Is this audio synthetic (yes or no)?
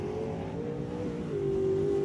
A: no